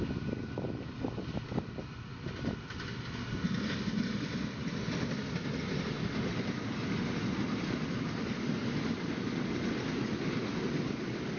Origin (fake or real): real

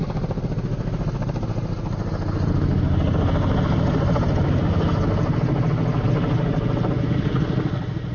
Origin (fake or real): real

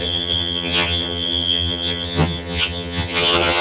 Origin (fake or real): fake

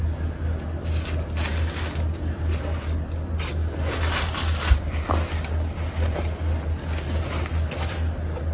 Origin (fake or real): real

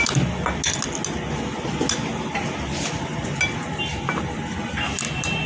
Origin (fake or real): real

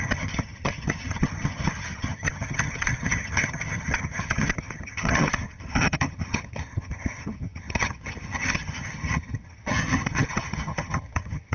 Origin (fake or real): fake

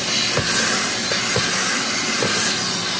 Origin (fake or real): real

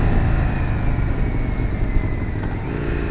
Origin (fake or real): real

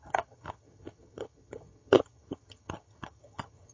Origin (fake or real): fake